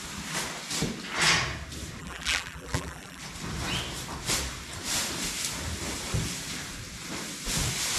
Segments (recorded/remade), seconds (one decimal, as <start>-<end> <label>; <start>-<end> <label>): 0.0-2.0 recorded; 2.0-3.2 remade; 3.2-8.0 recorded